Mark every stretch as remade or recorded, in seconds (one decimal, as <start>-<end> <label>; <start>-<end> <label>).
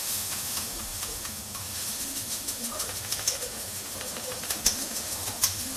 0.0-5.8 remade